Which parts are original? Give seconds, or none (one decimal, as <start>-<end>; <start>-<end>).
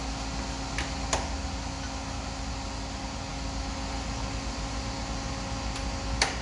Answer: 0.0-6.4